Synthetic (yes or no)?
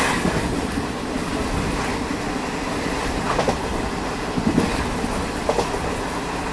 no